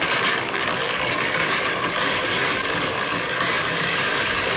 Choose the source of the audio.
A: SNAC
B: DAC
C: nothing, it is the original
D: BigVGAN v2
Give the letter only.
B